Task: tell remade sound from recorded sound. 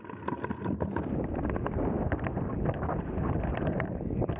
recorded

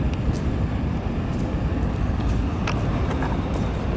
recorded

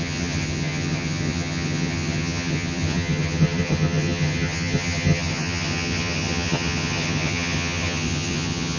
remade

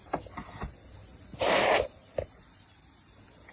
recorded